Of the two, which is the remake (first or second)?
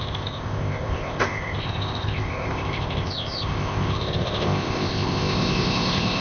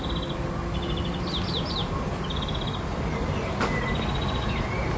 first